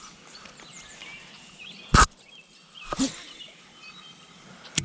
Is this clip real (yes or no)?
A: no